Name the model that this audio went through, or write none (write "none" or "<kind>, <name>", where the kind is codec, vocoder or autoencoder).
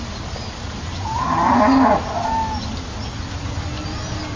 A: none